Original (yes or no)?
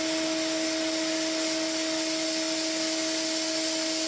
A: yes